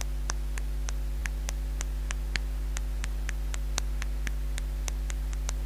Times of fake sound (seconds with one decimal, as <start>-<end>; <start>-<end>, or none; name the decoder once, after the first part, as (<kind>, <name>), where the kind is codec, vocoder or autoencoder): none